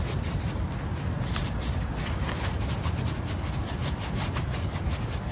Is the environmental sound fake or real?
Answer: real